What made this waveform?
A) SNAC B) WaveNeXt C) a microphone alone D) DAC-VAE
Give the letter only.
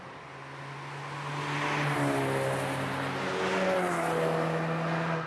C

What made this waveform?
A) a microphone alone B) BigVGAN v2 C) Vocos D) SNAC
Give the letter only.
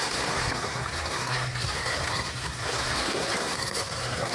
D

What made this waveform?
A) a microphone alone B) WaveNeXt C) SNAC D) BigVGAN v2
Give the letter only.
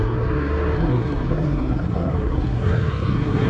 C